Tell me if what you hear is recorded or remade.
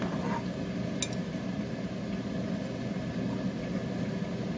recorded